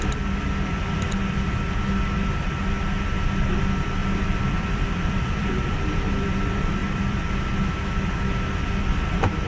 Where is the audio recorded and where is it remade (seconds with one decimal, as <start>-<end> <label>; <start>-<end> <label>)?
0.0-4.0 recorded; 4.0-5.5 remade; 5.5-6.8 recorded; 6.8-7.3 remade; 7.3-9.5 recorded